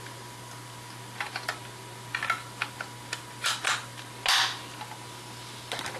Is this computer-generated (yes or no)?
no